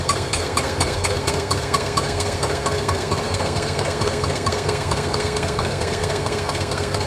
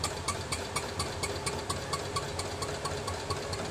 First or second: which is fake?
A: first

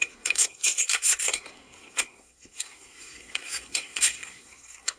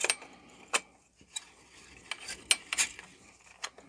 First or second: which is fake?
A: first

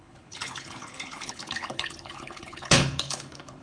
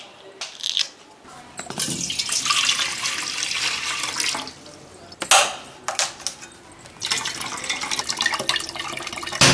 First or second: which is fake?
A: first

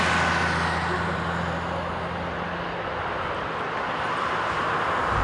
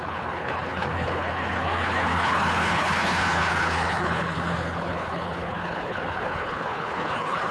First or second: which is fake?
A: second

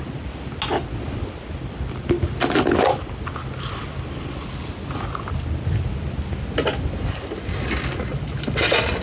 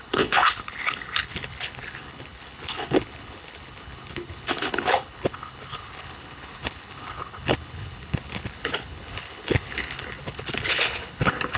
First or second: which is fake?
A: second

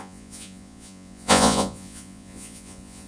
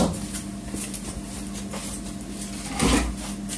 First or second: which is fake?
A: first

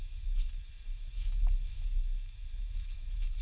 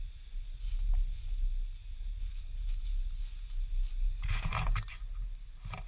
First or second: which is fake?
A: first